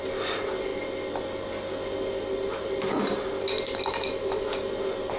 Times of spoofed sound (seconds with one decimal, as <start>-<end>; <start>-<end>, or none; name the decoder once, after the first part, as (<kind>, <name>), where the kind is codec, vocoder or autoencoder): none

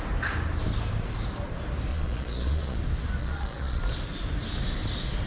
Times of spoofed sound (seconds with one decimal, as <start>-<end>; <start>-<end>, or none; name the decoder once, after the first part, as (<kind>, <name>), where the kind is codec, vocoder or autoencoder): 1.9-2.8 (vocoder, Vocos); 3.2-3.8

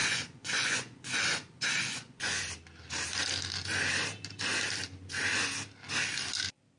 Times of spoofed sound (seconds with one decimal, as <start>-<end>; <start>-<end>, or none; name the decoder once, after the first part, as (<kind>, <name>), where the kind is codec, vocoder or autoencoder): 0.0-2.5 (vocoder, Vocos)

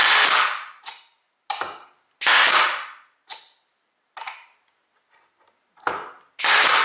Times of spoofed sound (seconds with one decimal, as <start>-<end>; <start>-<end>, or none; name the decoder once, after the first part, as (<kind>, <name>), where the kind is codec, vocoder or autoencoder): none

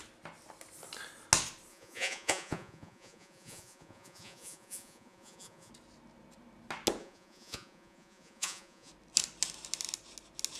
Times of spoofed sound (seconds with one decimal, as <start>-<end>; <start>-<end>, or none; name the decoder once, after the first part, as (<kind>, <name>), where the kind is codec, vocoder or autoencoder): 1.7-5.7 (vocoder, Vocos); 7.0-8.9

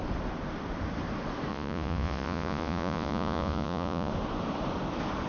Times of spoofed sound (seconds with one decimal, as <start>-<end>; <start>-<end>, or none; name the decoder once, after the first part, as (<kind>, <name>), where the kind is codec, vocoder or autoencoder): 1.5-4.1 (vocoder, Vocos)

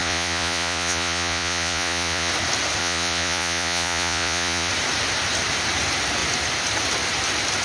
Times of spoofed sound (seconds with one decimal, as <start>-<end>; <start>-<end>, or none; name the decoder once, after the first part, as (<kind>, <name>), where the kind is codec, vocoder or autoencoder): 0.0-2.3 (vocoder, Vocos); 2.8-4.7

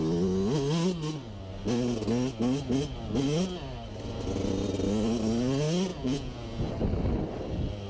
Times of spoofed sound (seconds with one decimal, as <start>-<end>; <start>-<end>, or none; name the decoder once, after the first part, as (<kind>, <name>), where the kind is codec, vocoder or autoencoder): 5.9-6.7 (vocoder, Vocos)